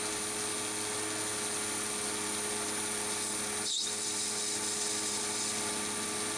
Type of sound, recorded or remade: recorded